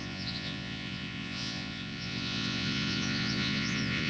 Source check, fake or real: fake